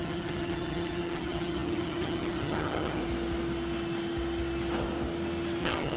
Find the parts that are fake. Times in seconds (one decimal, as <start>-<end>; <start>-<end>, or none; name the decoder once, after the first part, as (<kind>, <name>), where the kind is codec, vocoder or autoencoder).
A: 0.0-3.0 (vocoder, HiFi-GAN); 5.6-6.0